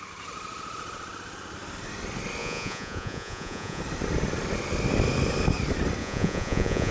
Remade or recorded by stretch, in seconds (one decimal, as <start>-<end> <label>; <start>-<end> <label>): 0.0-2.4 recorded; 2.4-3.8 remade; 3.8-6.0 recorded; 6.0-6.9 remade